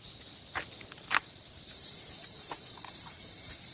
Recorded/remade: remade